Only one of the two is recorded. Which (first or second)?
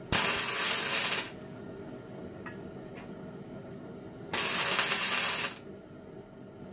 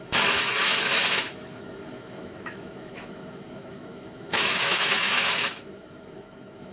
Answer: first